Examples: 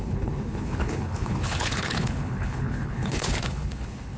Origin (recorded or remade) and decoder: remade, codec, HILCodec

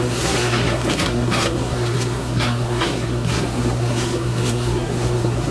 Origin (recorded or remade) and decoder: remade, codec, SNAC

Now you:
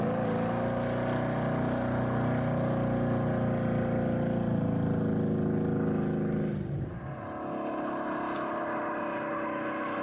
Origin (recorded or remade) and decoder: recorded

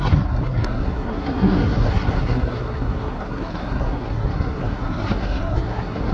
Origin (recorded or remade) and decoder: remade, codec, SNAC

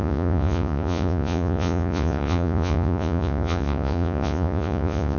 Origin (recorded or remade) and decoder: remade, vocoder, Vocos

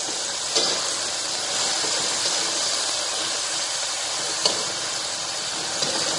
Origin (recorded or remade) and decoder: recorded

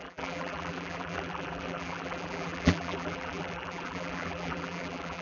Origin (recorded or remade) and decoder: remade, vocoder, BigVGAN v2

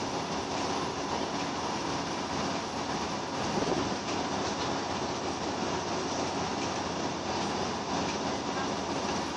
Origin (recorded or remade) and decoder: recorded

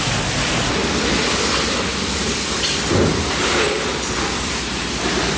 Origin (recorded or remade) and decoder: recorded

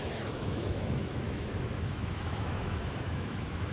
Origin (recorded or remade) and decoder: remade, autoencoder, DAC-VAE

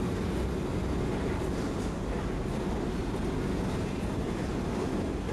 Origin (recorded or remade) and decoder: recorded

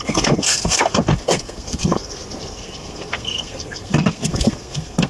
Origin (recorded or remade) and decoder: remade, codec, SNAC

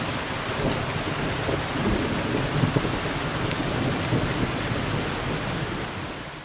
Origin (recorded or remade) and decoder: recorded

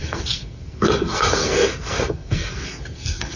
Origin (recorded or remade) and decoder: remade, codec, SNAC